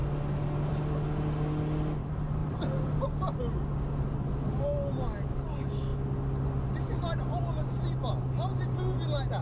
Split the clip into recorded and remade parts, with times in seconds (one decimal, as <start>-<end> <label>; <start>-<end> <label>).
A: 0.0-2.4 recorded; 2.4-3.4 remade; 3.4-9.4 recorded